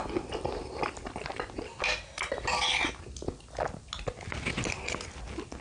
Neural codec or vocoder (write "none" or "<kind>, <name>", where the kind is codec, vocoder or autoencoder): none